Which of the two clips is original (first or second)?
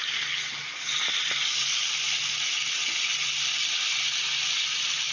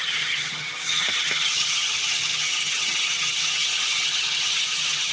first